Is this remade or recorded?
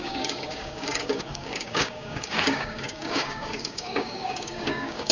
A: remade